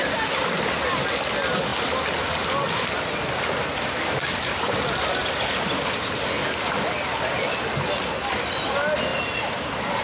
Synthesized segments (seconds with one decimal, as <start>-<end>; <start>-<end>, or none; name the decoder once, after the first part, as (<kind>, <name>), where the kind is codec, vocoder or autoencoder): none